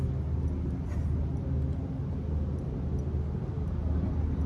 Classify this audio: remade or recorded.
recorded